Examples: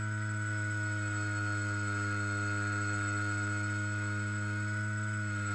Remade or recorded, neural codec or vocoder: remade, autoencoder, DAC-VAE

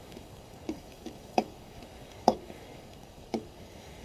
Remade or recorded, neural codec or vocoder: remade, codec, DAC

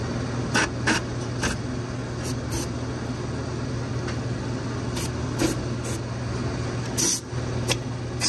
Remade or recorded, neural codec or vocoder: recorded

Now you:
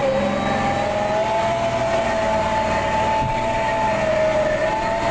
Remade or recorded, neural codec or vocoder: recorded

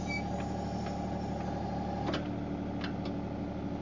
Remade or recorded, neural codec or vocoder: recorded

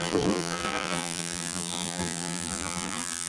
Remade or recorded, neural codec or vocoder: remade, vocoder, BigVGAN v2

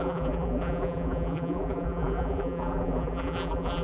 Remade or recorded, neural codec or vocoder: remade, vocoder, BigVGAN v2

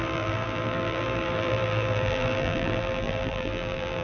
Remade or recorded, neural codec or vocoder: remade, vocoder, BigVGAN v2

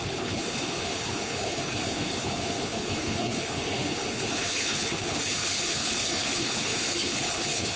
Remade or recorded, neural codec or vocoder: remade, codec, HILCodec